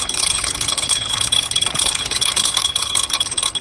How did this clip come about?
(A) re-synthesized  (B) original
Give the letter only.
A